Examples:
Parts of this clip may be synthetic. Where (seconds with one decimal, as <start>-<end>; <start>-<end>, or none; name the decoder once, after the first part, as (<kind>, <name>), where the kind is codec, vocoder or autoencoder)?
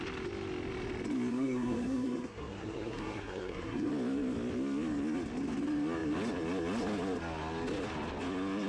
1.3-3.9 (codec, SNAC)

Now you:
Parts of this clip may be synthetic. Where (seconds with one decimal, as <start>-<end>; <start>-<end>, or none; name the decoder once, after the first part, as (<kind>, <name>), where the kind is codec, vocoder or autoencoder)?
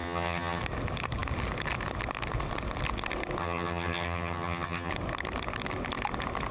0.0-0.6 (vocoder, HiFi-GAN); 3.4-4.9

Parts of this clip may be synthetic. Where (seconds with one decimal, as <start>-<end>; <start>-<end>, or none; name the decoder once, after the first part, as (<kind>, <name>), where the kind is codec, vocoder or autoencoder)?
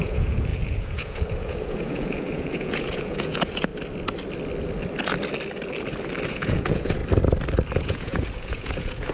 0.0-3.7 (vocoder, Vocos); 6.3-7.0; 7.8-9.1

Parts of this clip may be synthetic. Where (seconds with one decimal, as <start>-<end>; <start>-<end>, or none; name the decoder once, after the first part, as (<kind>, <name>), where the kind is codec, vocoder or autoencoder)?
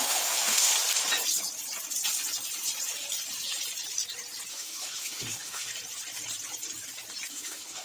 0.0-0.7 (autoencoder, DAC-VAE); 4.5-5.7; 7.3-7.8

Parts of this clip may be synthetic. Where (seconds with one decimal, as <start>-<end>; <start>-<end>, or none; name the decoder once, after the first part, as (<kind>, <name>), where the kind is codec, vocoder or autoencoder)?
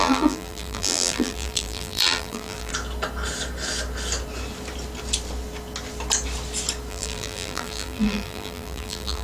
0.0-2.7 (vocoder, BigVGAN v2); 6.9-9.2